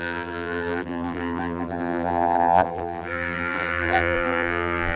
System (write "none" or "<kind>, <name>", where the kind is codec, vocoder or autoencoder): vocoder, BigVGAN v2